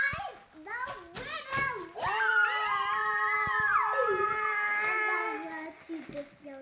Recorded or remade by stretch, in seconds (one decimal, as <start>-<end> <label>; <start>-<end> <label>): 0.0-6.6 recorded